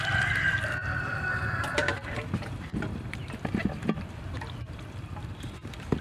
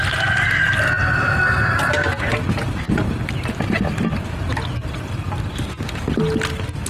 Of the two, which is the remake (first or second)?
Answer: first